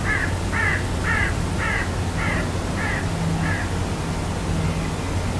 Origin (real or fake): real